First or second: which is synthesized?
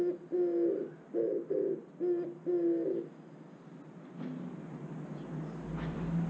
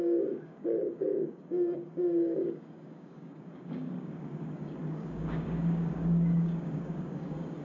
second